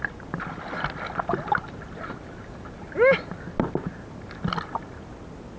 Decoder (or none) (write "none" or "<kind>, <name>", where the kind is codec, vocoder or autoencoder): none